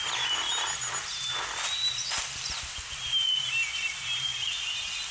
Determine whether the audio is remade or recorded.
recorded